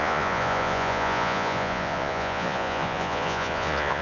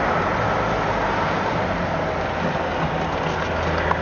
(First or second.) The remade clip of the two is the first